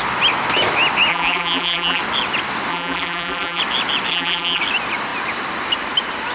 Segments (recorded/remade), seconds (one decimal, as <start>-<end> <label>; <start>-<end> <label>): 0.0-1.1 recorded; 1.1-2.0 remade; 2.0-2.7 recorded; 2.7-3.6 remade; 3.6-4.1 recorded; 4.1-4.6 remade; 4.6-6.3 recorded